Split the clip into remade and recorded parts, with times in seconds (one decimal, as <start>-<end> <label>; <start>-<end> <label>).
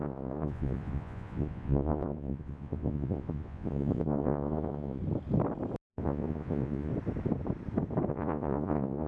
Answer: 0.0-5.0 remade; 5.0-5.9 recorded; 5.9-6.9 remade; 6.9-8.1 recorded; 8.1-9.1 remade